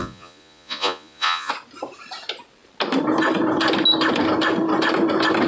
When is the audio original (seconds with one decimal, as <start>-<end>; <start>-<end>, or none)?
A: 1.5-5.5